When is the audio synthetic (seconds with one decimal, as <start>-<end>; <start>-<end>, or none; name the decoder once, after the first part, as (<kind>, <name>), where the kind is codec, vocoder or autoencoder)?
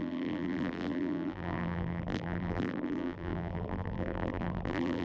0.0-5.0 (vocoder, BigVGAN v2)